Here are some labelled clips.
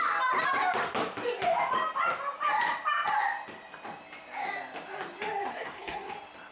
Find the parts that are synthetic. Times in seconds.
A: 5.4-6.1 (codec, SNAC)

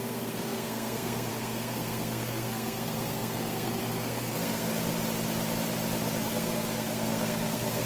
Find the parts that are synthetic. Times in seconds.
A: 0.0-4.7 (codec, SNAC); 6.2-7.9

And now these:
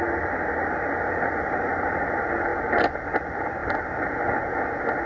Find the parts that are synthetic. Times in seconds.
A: none

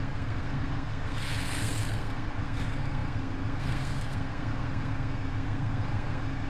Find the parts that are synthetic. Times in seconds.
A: 0.0-6.5 (codec, SNAC)